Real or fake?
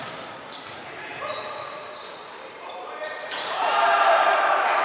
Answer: fake